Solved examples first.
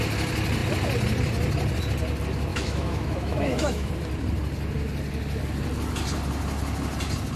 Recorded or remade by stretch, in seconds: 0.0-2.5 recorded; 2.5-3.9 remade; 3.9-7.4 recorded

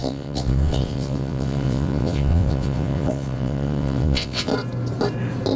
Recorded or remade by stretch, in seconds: 0.0-4.5 remade; 4.5-5.6 recorded

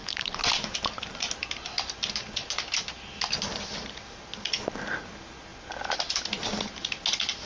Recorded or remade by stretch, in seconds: 0.0-7.5 recorded

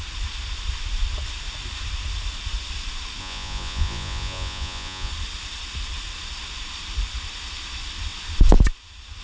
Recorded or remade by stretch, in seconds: 0.0-3.2 recorded; 3.2-5.1 remade; 5.1-9.2 recorded

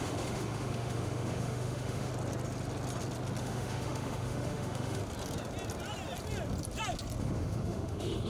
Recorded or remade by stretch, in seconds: 0.0-2.1 remade; 2.1-3.4 recorded; 3.4-5.0 remade; 5.0-7.2 recorded; 7.2-8.3 remade

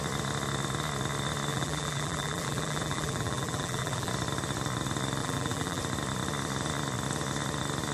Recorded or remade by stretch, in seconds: 0.0-1.5 recorded; 1.5-4.1 remade; 4.1-5.2 recorded; 5.2-5.8 remade; 5.8-7.9 recorded